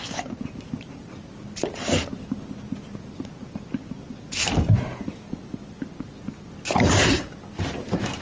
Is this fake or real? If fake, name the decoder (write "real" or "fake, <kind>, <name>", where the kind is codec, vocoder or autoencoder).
real